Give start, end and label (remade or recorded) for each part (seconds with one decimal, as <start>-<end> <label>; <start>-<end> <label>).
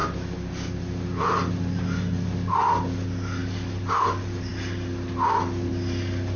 0.0-6.4 recorded